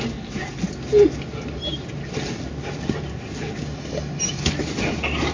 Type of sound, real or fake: real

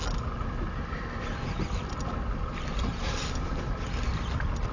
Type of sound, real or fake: real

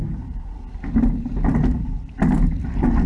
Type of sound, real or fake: real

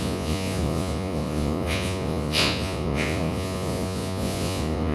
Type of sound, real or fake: fake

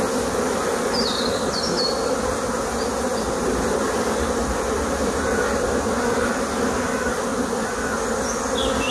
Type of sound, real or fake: real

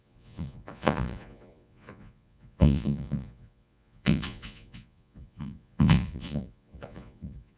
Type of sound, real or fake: fake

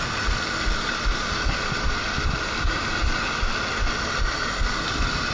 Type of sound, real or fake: real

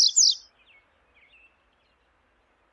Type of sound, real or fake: real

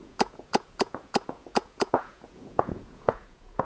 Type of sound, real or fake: fake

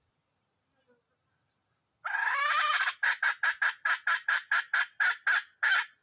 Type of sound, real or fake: real